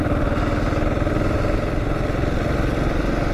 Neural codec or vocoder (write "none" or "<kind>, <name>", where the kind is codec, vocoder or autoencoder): none